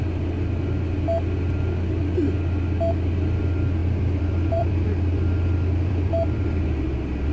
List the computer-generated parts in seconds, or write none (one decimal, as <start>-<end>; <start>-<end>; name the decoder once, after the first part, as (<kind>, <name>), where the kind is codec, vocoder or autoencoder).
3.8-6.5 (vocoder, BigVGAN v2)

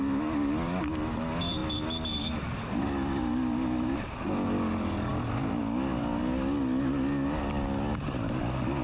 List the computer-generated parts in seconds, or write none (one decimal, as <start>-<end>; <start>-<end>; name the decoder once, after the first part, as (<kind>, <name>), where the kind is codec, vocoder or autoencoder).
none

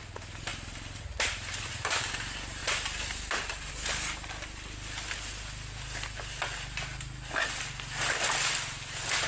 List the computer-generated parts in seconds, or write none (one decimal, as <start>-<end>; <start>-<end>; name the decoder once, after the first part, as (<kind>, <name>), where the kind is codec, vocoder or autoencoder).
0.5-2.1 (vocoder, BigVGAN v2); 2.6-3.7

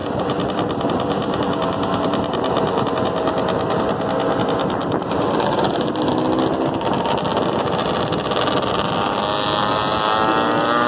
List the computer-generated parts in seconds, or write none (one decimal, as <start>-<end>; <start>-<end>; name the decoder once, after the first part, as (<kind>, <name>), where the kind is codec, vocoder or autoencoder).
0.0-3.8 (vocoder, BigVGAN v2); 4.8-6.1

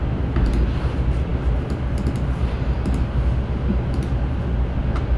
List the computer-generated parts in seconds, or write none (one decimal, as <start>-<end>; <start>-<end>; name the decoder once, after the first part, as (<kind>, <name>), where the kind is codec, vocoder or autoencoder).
none